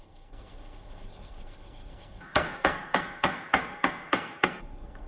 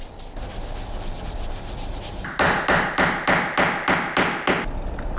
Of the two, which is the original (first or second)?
second